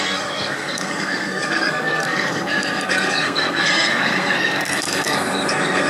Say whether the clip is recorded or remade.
remade